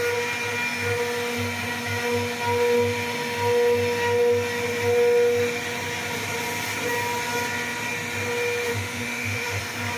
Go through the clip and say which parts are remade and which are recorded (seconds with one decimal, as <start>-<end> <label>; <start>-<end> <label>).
0.0-8.7 recorded; 8.7-9.6 remade; 9.6-10.0 recorded